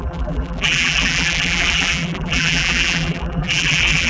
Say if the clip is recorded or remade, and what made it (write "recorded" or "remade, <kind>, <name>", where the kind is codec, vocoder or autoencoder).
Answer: remade, vocoder, BigVGAN v2